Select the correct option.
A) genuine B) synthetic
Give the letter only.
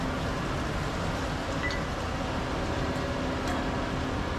A